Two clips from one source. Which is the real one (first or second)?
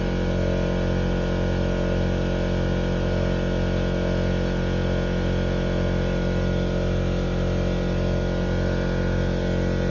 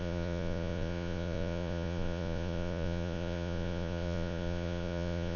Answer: first